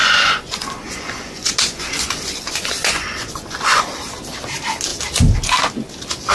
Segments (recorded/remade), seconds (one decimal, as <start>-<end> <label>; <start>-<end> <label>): 0.0-3.8 remade; 3.8-6.3 recorded